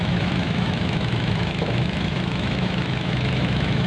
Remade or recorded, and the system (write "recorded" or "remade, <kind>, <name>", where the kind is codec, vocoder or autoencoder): remade, autoencoder, DAC-VAE